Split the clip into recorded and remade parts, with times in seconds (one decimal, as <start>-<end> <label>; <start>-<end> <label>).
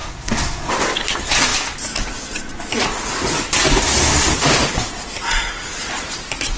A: 0.0-0.7 remade; 0.7-6.6 recorded